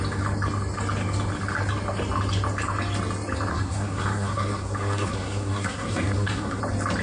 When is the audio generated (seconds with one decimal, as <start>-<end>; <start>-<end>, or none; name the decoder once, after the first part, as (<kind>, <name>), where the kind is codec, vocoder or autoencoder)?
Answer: 3.5-6.6 (codec, SNAC)